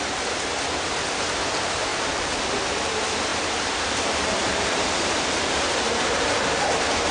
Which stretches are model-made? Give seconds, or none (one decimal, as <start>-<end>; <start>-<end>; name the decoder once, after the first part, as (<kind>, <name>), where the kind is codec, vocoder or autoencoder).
1.9-2.5 (vocoder, BigVGAN v2); 3.3-6.6